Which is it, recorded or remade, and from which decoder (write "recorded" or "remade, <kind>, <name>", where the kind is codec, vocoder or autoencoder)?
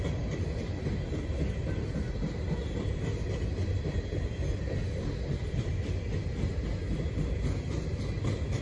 recorded